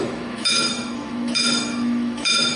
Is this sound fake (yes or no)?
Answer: yes